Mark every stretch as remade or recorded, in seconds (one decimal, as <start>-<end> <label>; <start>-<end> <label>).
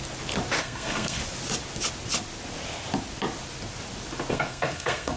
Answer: 0.0-0.6 recorded; 0.6-1.2 remade; 1.2-4.3 recorded; 4.3-5.2 remade